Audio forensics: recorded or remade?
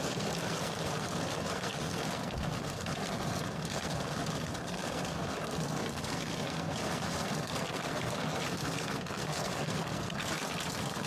remade